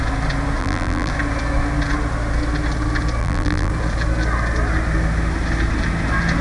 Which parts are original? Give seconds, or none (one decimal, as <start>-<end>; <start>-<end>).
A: 0.0-0.6; 1.1-3.2; 3.7-6.4